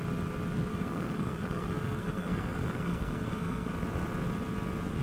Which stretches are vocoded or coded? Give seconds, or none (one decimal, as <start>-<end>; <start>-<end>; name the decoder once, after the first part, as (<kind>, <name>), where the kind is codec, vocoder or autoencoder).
0.7-3.7 (codec, SNAC)